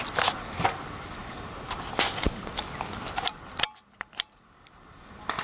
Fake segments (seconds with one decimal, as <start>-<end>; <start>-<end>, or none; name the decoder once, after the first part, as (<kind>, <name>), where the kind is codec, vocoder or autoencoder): none

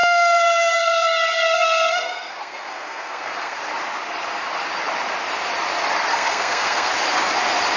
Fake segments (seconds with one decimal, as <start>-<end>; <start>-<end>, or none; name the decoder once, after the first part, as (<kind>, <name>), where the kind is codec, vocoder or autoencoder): 0.0-3.6 (codec, SNAC); 6.1-6.9

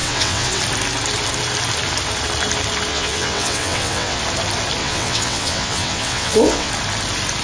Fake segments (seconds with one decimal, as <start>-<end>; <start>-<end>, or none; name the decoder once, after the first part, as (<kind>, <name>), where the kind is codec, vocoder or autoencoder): 0.0-0.6 (vocoder, WaveNeXt); 2.9-4.2; 4.8-6.7

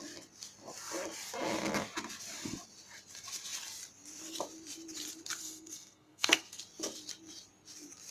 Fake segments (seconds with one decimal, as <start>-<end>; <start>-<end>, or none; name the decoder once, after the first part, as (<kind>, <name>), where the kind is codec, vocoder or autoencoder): 5.4-6.6 (codec, SNAC)